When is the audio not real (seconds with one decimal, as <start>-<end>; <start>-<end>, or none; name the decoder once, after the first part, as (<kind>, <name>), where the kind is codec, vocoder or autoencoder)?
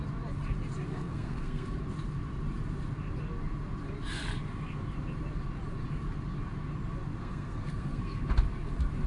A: 0.9-1.8 (codec, SNAC); 7.2-8.2